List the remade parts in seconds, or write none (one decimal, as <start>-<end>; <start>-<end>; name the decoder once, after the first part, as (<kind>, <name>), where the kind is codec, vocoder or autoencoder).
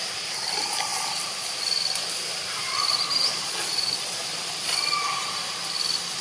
3.3-4.2 (vocoder, Vocos)